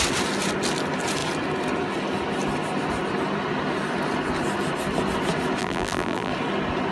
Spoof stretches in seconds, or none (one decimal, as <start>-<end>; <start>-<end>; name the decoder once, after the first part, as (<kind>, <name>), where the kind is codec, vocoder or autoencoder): 5.6-6.3 (vocoder, BigVGAN v2)